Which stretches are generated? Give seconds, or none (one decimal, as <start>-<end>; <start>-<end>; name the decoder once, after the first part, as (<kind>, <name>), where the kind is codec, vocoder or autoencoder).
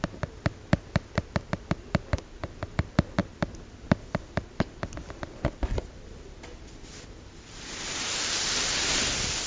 none